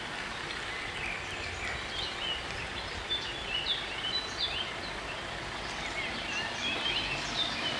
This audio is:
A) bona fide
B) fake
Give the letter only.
A